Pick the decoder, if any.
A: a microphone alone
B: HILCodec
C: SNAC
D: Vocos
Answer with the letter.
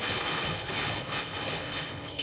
B